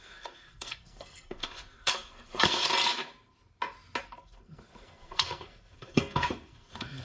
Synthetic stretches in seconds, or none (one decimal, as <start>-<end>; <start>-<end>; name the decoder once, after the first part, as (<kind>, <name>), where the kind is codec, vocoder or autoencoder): 0.0-2.7 (codec, SNAC); 4.0-7.0